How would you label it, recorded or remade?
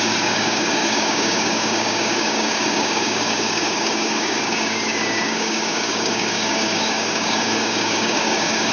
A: remade